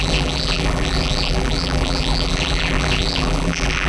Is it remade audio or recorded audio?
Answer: remade